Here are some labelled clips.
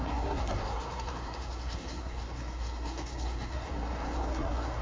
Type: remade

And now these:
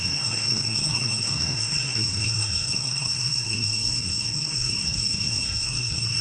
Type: remade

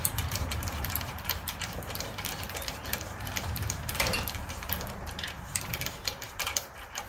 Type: remade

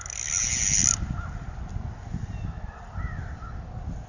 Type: recorded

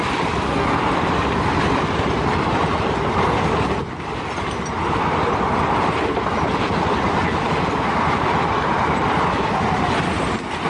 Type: recorded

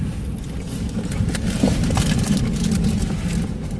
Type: recorded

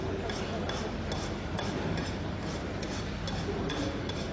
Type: recorded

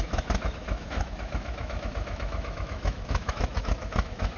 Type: remade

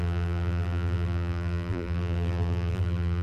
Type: remade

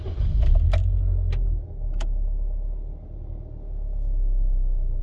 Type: recorded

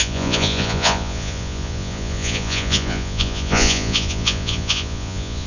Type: remade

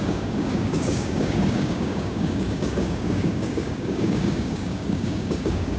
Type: remade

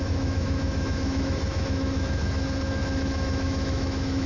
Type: remade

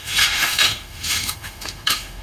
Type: remade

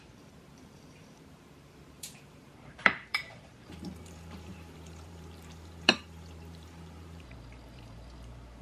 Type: remade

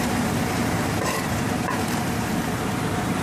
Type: remade